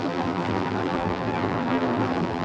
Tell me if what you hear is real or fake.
fake